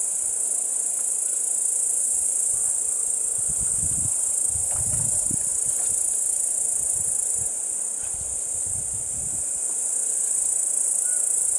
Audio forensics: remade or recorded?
recorded